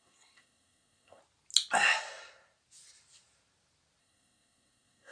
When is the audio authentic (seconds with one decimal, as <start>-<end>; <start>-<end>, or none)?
1.2-4.0